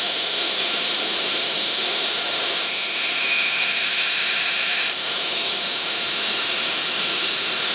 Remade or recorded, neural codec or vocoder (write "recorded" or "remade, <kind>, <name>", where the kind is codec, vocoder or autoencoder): remade, autoencoder, DAC-VAE